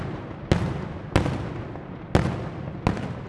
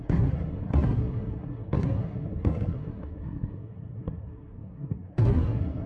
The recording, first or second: first